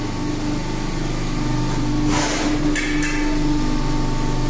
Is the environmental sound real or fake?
real